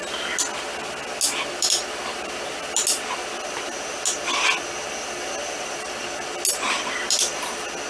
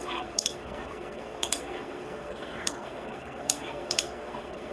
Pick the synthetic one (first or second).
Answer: second